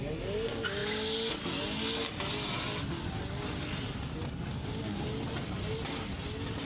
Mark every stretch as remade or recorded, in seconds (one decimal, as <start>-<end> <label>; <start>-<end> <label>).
0.0-6.6 recorded